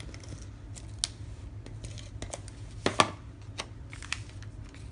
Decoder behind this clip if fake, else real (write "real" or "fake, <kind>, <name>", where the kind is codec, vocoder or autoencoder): real